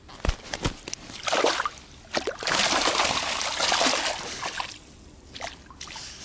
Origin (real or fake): real